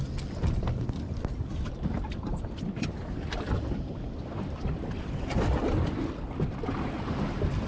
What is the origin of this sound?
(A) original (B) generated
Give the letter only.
A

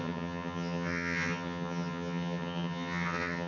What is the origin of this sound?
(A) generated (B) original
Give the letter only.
A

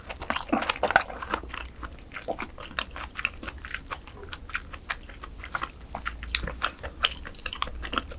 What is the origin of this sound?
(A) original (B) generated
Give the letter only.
A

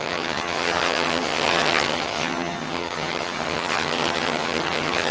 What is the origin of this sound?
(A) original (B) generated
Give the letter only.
B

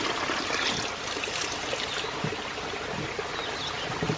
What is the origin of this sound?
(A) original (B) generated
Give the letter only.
A